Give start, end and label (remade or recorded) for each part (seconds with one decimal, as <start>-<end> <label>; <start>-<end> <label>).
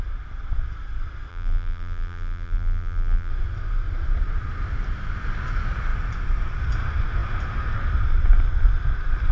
0.0-1.3 recorded; 1.3-3.3 remade; 3.3-9.3 recorded